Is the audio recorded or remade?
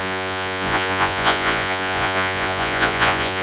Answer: remade